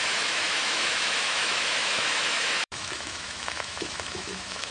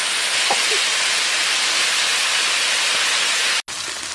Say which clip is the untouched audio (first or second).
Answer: second